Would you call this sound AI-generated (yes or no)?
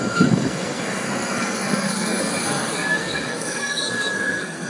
yes